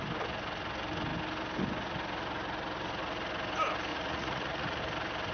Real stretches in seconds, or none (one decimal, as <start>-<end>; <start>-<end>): 0.0-3.9; 4.8-5.3